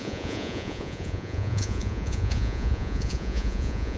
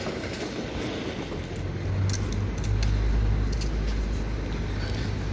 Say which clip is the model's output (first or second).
first